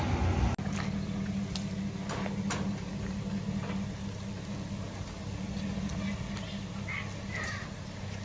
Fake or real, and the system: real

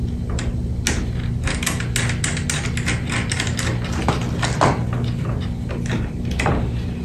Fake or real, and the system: real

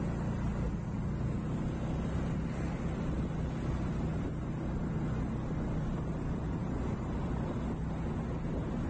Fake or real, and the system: real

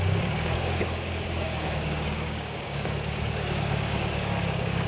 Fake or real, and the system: fake, codec, DAC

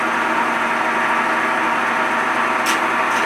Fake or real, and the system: real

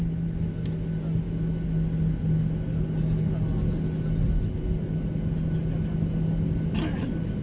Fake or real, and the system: real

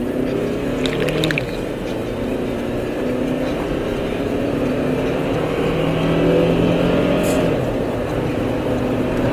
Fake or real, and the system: real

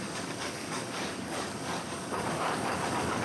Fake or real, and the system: fake, codec, DAC